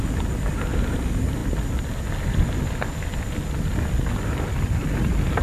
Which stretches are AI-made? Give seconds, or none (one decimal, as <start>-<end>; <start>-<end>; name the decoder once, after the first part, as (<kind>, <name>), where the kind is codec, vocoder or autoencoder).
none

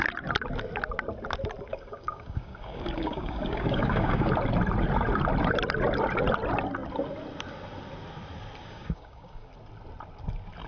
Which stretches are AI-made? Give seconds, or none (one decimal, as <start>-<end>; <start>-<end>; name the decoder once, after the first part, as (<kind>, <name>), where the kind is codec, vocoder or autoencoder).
1.7-4.3 (codec, DAC); 8.6-9.5

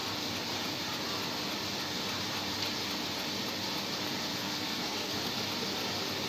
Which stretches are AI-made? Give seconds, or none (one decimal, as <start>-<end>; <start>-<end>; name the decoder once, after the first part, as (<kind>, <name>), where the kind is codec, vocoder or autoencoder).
4.3-5.3 (codec, SNAC)